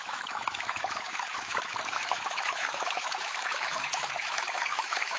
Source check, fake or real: fake